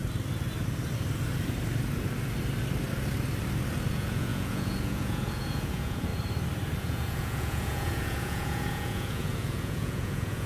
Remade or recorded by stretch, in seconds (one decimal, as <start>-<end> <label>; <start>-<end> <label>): 0.0-3.9 recorded; 3.9-6.1 remade; 6.1-6.8 recorded; 6.8-10.5 remade